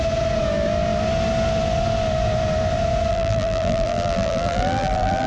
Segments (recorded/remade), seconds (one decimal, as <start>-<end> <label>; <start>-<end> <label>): 0.0-3.1 recorded; 3.1-5.3 remade